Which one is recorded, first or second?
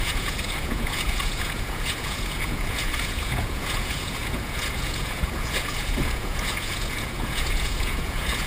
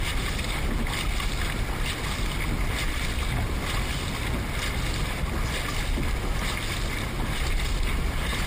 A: second